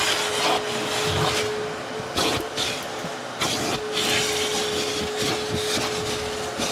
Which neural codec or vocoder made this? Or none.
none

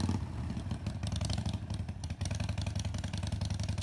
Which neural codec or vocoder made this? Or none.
none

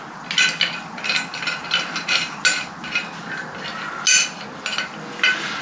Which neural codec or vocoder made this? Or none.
none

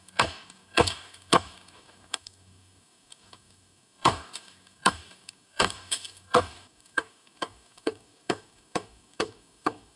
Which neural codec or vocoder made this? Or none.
codec, DAC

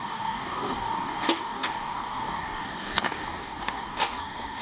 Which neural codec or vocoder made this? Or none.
codec, DAC